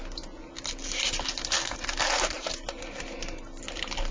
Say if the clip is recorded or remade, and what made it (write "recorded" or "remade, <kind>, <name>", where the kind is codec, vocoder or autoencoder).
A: recorded